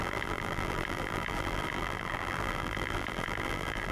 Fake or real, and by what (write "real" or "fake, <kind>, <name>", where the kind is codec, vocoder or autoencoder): fake, vocoder, BigVGAN v2